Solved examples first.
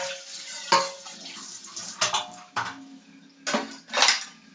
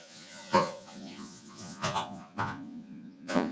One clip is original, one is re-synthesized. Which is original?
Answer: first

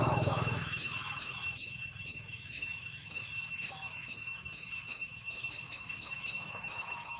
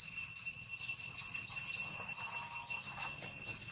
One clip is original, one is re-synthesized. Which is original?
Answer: second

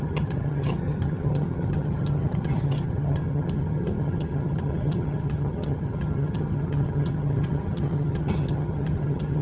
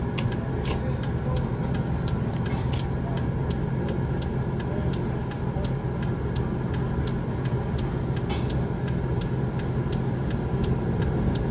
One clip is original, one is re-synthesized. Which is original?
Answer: second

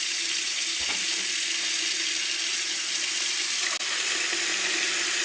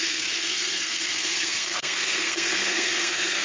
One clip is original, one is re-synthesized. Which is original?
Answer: first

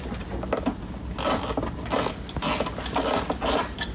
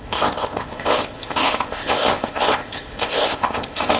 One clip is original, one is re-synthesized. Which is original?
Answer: first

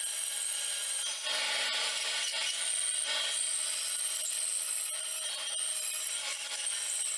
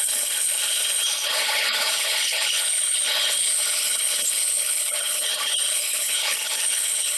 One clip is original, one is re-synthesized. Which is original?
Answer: first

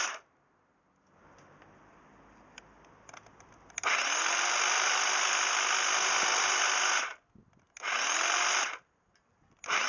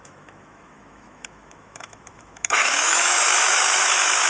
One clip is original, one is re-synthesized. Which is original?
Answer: first